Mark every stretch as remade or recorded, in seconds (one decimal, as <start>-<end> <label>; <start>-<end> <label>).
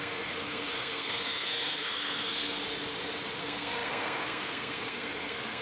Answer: 0.0-2.6 remade; 2.6-3.4 recorded; 3.4-5.6 remade